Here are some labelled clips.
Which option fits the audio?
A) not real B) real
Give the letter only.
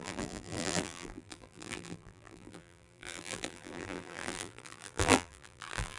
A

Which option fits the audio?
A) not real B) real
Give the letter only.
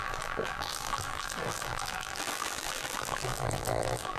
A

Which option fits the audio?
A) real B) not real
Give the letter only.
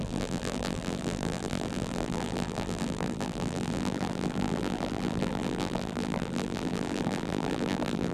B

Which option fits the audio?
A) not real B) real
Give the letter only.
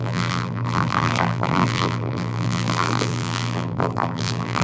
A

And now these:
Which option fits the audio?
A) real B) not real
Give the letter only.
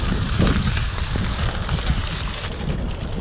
A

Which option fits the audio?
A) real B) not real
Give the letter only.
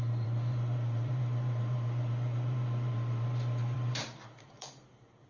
B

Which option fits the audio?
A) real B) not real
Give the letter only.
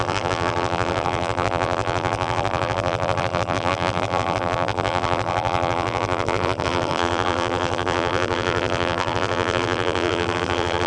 B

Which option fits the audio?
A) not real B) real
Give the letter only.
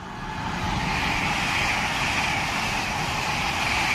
B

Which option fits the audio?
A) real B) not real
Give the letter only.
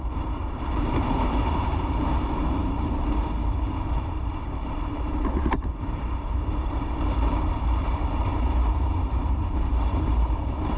B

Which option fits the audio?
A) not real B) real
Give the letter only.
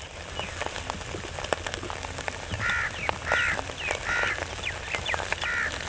B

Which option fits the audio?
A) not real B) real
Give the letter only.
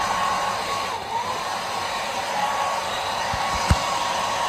A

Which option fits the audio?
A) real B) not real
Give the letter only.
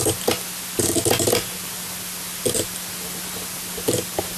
A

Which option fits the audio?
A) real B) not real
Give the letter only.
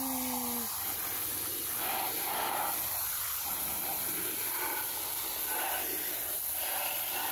A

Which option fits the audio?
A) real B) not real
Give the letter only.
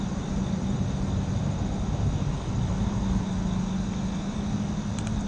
A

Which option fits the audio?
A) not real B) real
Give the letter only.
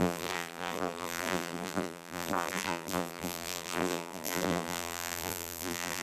A